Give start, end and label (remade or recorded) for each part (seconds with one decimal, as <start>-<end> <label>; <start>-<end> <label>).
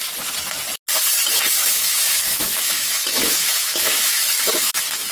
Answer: 0.0-1.6 recorded; 1.6-5.1 remade